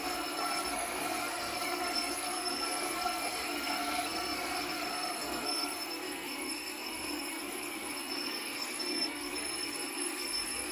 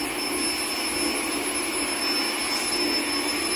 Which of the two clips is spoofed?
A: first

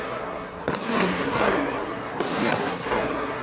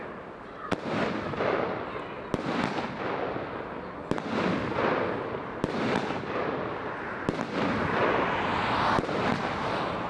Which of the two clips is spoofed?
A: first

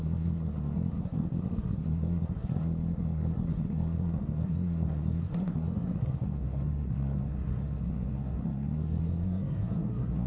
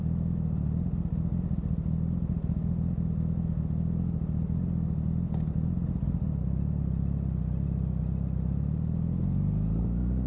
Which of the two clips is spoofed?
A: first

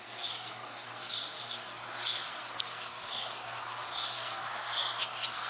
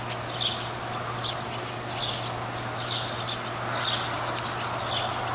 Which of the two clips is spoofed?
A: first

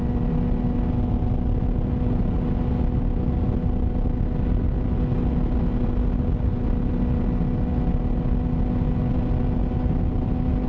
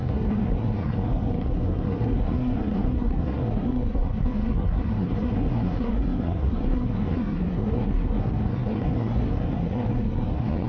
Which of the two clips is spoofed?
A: second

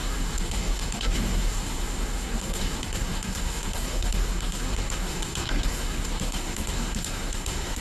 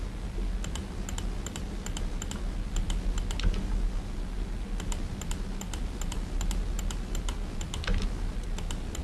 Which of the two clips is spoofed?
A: first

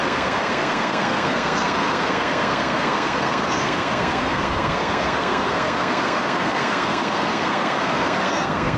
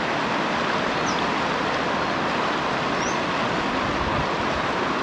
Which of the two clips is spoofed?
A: first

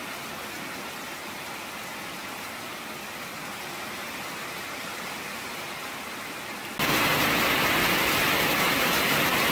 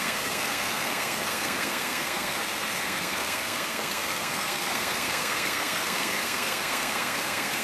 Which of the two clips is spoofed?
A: second